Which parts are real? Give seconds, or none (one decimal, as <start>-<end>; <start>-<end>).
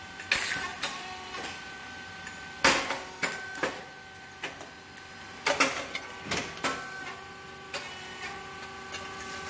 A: 0.0-0.7; 2.0-9.5